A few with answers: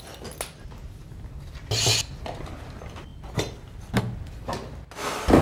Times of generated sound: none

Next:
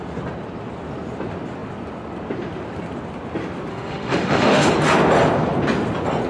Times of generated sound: 3.7-4.7 (autoencoder, DAC-VAE)

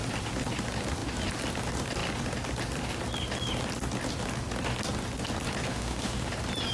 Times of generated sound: 5.7-6.3 (autoencoder, DAC-VAE)

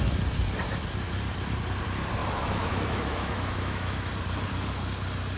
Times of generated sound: 2.2-4.1 (autoencoder, DAC-VAE)

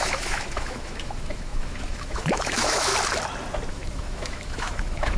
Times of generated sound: 0.0-2.9 (autoencoder, DAC-VAE); 3.7-5.2

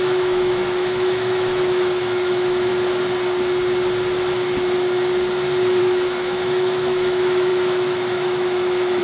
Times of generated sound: 0.0-2.7 (autoencoder, DAC-VAE); 5.8-9.0